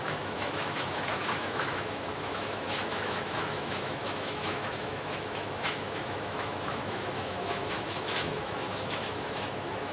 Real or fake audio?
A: fake